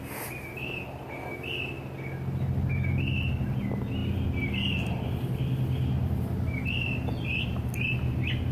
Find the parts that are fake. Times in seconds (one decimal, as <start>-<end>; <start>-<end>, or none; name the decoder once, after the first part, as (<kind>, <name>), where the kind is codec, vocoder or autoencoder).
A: none